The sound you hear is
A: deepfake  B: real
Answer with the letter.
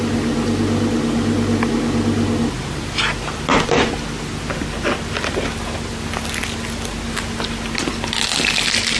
B